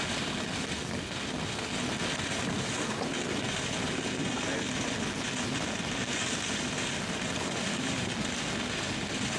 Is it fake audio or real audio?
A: real